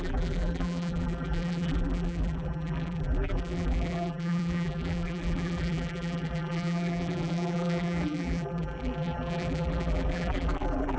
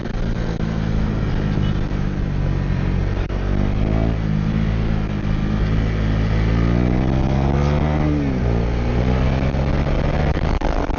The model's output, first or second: first